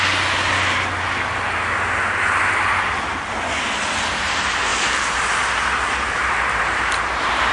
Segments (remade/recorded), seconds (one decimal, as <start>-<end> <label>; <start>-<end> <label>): 0.0-7.5 recorded

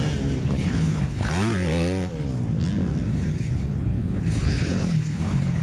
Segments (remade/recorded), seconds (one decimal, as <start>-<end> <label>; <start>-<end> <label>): 0.0-0.4 recorded; 0.4-1.3 remade; 1.3-3.1 recorded; 3.1-5.6 remade

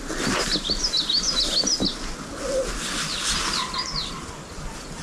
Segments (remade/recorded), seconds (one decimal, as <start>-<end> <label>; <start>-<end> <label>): 0.0-5.0 recorded

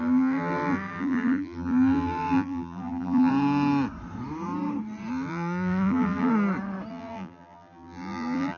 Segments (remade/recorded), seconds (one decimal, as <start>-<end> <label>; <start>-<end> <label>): 0.0-3.3 remade; 3.3-5.1 recorded; 5.1-6.3 remade; 6.3-6.9 recorded; 6.9-8.6 remade

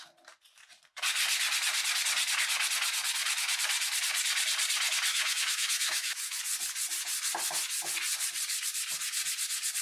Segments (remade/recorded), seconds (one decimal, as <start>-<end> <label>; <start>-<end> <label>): 0.0-5.1 recorded; 5.1-6.4 remade; 6.4-9.8 recorded

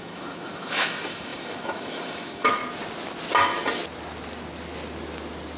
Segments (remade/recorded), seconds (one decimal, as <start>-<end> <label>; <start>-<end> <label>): 0.0-2.6 remade; 2.6-5.6 recorded

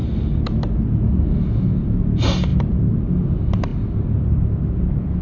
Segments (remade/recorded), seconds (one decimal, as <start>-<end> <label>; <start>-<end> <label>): 0.0-5.2 recorded

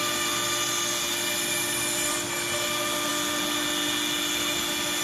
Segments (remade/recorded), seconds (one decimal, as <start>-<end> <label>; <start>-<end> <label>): 0.0-5.0 recorded